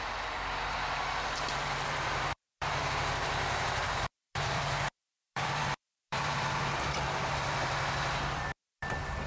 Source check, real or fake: fake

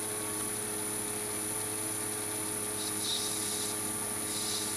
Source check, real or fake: real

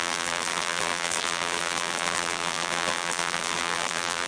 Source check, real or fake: fake